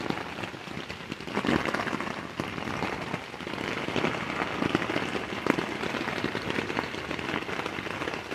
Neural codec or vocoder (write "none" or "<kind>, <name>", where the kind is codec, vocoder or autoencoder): none